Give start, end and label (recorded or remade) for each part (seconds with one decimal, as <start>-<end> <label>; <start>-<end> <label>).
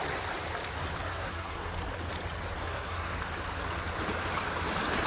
0.0-1.1 recorded; 1.1-1.7 remade; 1.7-2.6 recorded; 2.6-3.1 remade; 3.1-5.1 recorded